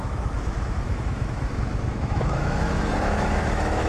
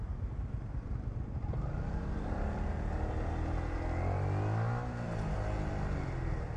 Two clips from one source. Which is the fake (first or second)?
first